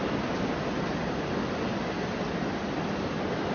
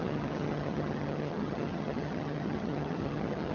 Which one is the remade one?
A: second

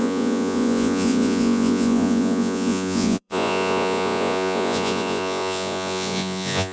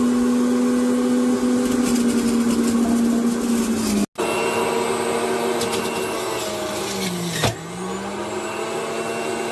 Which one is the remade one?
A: first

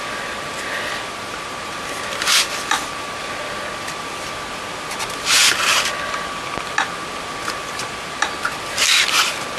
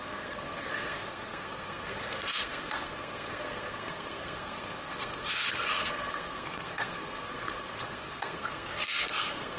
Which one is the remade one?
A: second